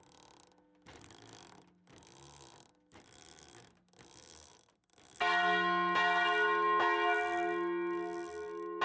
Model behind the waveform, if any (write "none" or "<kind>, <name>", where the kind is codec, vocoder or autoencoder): none